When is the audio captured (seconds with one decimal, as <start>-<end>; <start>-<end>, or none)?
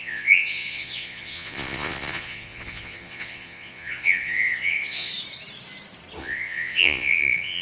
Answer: 5.1-6.2